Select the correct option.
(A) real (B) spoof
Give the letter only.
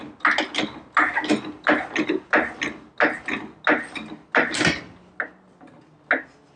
A